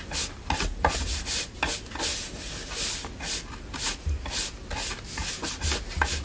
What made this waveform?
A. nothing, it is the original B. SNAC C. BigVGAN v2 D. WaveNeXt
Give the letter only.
A